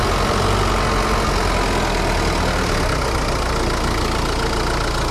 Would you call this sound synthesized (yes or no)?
no